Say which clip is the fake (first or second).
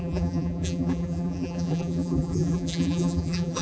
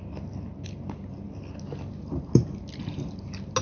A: first